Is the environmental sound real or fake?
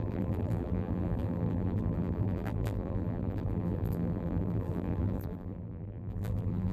fake